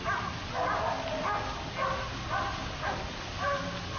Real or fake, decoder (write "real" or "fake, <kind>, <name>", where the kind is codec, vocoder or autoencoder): real